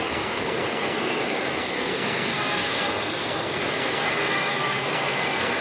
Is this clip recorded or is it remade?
remade